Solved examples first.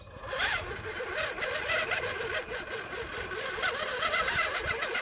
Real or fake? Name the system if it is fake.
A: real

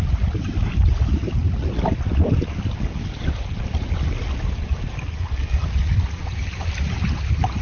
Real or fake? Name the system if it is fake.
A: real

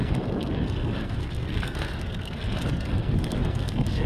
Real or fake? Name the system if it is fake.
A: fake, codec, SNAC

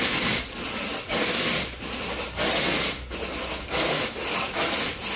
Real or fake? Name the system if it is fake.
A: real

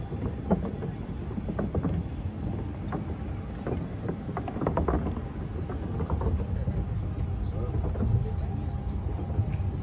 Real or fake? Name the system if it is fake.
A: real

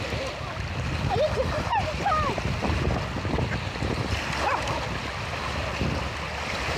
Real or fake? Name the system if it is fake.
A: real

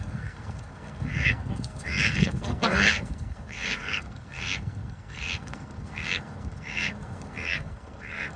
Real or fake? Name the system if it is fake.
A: fake, codec, SNAC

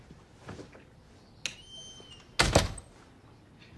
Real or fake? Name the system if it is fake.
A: real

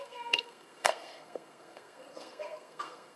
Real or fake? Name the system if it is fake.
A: fake, codec, SNAC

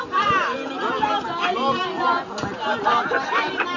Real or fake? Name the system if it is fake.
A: real